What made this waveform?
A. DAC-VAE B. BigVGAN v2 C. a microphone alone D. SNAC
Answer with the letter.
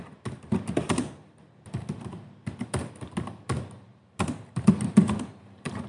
C